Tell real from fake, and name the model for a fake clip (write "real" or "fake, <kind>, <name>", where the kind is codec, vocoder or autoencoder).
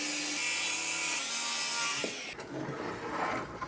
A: real